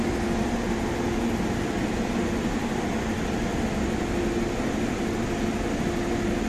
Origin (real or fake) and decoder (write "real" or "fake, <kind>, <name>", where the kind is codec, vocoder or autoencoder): real